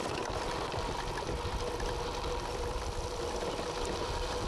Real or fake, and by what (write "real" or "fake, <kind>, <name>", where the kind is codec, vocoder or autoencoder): real